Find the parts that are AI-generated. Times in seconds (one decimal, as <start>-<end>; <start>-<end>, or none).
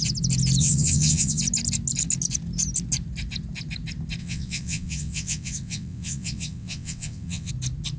0.6-1.4; 4.2-7.5